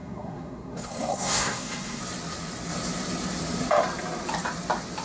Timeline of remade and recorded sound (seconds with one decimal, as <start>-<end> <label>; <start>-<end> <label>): 0.0-2.0 remade; 2.0-5.0 recorded